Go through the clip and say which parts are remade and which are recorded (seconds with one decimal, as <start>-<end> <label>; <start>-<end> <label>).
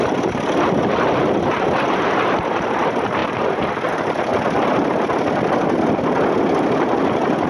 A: 0.0-3.2 remade; 3.2-3.8 recorded; 3.8-4.3 remade; 4.3-7.0 recorded; 7.0-7.5 remade